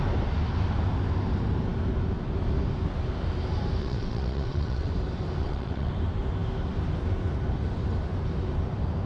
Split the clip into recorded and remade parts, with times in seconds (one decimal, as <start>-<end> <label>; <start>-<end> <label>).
0.0-3.8 recorded; 3.8-4.9 remade; 4.9-5.4 recorded; 5.4-5.9 remade; 5.9-9.1 recorded